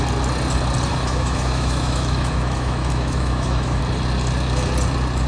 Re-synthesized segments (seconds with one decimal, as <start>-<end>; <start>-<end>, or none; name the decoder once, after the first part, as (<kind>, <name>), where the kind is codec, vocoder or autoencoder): 0.9-3.8 (autoencoder, DAC-VAE)